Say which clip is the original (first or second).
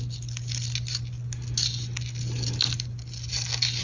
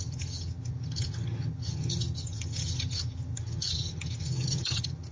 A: first